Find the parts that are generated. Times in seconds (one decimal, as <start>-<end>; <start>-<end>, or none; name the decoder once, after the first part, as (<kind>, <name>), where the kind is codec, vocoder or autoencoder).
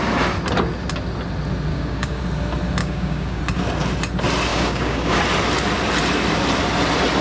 1.7-2.2 (codec, DAC); 2.8-3.4; 4.5-5.2